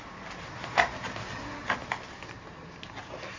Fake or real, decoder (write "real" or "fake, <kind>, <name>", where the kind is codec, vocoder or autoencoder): real